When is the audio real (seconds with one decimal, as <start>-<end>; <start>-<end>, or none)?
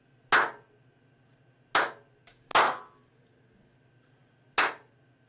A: 0.0-5.3